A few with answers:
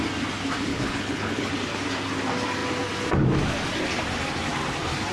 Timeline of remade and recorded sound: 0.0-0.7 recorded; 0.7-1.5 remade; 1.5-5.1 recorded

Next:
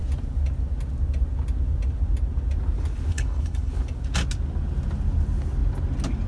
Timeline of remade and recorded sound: 0.0-3.1 recorded; 3.1-3.7 remade; 3.7-6.3 recorded

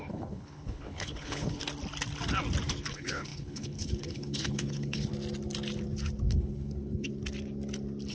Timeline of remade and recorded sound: 0.0-1.6 remade; 1.6-2.9 recorded; 2.9-5.1 remade; 5.1-6.3 recorded; 6.3-7.1 remade; 7.1-8.1 recorded

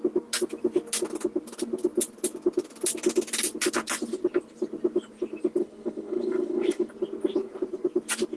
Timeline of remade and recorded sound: 0.0-5.6 recorded; 5.6-6.9 remade; 6.9-8.4 recorded

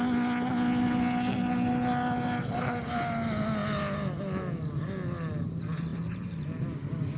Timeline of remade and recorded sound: 0.0-7.2 recorded